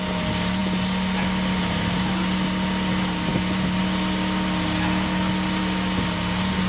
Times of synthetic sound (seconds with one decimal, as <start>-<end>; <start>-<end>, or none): none